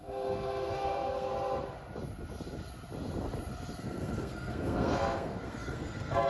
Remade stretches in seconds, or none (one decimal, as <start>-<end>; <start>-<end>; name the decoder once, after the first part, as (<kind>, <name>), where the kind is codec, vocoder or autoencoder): 0.0-1.3 (codec, SNAC); 3.8-6.3